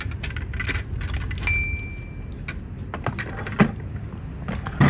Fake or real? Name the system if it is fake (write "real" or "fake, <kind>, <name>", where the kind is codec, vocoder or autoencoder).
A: real